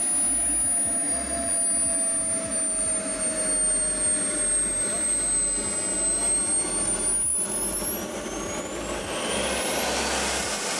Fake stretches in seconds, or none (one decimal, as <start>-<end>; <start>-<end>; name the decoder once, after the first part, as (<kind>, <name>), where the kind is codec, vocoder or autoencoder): none